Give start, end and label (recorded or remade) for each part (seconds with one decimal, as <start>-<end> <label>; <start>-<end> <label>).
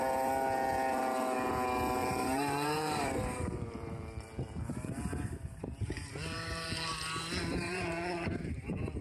0.0-2.0 recorded; 2.0-6.9 remade; 6.9-7.5 recorded; 7.5-9.0 remade